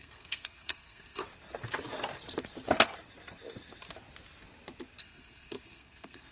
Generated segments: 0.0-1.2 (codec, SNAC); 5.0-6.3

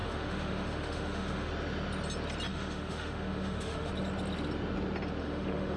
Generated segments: 0.0-1.5 (autoencoder, DAC-VAE); 2.5-3.9; 5.2-5.8

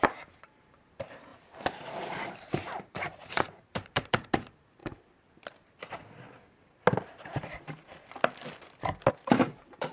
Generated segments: 0.0-4.8 (vocoder, BigVGAN v2); 9.1-9.9

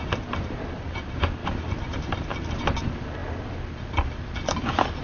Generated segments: 1.4-2.5 (vocoder, BigVGAN v2)

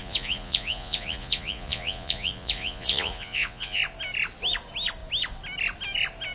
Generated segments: 0.0-3.8 (vocoder, Vocos)

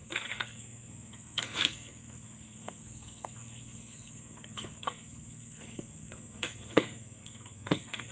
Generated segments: 0.0-8.1 (codec, SNAC)